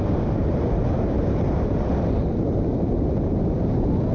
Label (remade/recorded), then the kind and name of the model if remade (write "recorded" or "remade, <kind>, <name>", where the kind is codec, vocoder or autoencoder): remade, vocoder, BigVGAN v2